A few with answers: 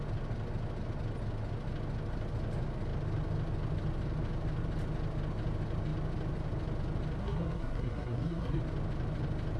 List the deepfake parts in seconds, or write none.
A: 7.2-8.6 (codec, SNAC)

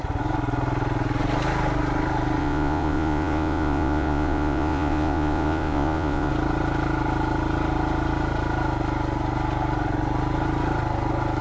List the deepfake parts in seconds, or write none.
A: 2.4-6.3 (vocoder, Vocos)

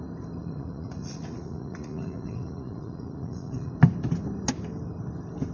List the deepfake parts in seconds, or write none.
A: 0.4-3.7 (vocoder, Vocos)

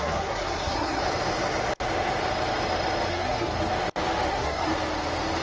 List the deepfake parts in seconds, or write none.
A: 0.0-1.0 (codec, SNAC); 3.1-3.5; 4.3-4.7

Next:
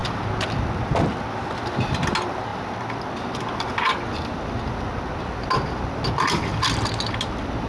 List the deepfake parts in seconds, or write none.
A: none